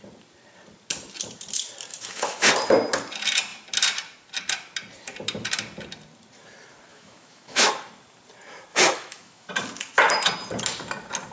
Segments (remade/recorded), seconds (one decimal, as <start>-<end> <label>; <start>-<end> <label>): 0.0-1.9 recorded; 1.9-2.5 remade; 2.5-6.9 recorded; 6.9-7.7 remade; 7.7-8.7 recorded; 8.7-9.5 remade; 9.5-11.3 recorded